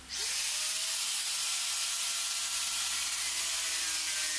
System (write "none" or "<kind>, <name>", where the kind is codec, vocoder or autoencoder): none